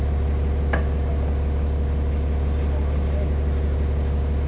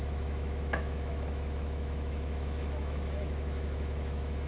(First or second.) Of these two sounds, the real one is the first